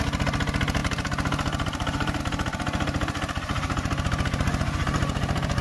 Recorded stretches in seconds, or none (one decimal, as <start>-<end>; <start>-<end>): 0.0-5.6